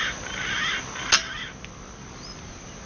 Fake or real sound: real